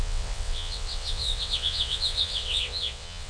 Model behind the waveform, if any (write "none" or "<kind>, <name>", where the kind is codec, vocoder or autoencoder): vocoder, WaveNeXt